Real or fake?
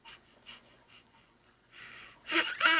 fake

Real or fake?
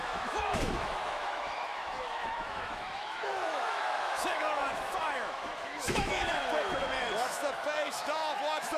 fake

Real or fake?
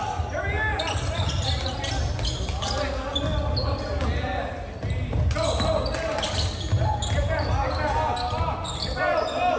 real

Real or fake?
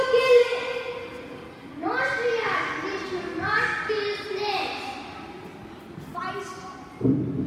real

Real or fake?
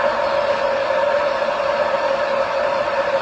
real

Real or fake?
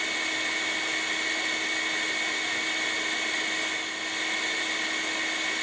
real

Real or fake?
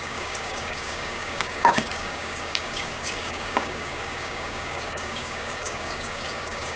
fake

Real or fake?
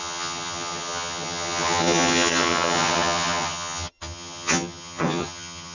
fake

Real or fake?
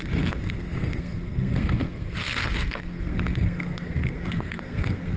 fake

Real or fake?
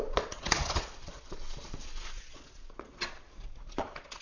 fake